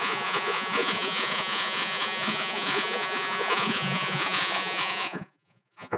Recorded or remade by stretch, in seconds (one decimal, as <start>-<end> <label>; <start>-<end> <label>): 0.0-6.0 remade